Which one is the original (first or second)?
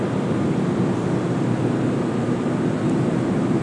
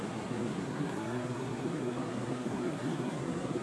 first